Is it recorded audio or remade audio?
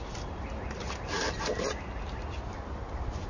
recorded